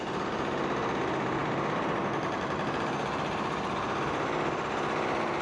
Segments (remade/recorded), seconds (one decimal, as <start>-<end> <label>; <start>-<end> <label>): 0.0-5.4 recorded